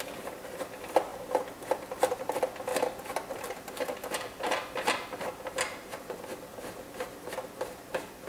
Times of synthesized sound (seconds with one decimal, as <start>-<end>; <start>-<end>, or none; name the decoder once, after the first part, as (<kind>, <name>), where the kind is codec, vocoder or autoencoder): 1.1-2.2 (vocoder, BigVGAN v2); 2.7-5.3